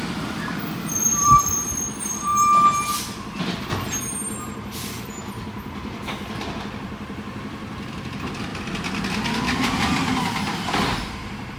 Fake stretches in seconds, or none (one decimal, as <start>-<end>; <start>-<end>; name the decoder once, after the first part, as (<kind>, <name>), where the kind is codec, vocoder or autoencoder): 0.0-2.3 (vocoder, BigVGAN v2); 4.9-8.5; 9.1-11.6